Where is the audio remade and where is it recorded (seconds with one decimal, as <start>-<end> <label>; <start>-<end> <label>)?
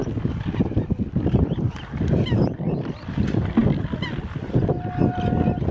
0.0-5.7 recorded